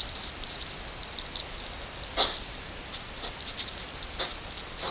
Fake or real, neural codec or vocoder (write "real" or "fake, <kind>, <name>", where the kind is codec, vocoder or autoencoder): real